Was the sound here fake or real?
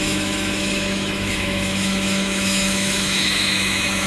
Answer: fake